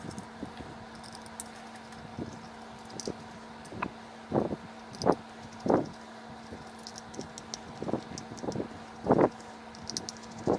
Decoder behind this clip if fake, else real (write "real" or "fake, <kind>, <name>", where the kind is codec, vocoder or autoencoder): real